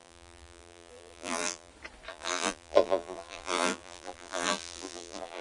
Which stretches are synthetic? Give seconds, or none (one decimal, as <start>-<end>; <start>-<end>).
0.0-1.7; 2.1-5.4